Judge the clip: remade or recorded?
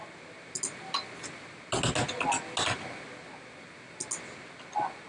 recorded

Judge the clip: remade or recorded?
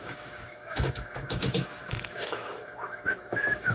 remade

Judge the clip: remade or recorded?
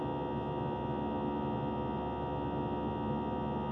recorded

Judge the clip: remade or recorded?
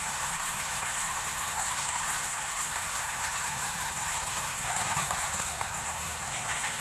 remade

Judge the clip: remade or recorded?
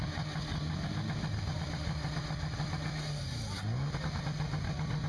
recorded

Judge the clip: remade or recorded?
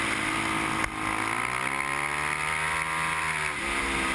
recorded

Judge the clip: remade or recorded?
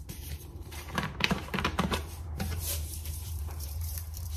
remade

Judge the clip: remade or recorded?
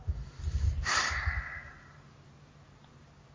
recorded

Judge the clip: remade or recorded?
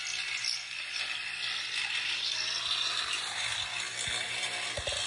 recorded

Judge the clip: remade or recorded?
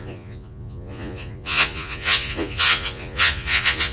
remade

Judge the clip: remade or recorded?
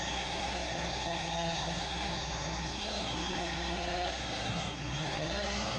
remade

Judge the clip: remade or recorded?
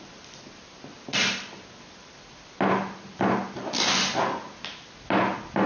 recorded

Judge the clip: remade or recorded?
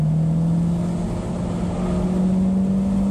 recorded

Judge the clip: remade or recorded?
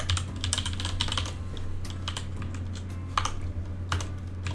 recorded